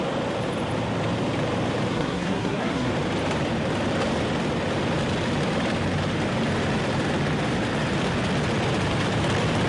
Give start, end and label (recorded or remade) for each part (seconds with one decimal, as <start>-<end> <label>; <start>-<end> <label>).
0.0-1.9 recorded; 1.9-2.9 remade; 2.9-9.7 recorded